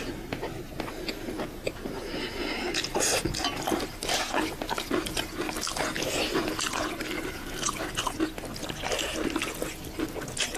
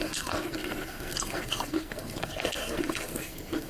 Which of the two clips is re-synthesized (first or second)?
second